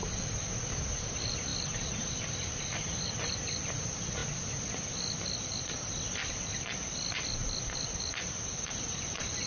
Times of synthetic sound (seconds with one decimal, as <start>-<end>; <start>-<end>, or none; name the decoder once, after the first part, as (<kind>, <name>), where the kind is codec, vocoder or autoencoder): 0.0-4.2 (vocoder, BigVGAN v2); 5.6-6.2; 8.7-9.5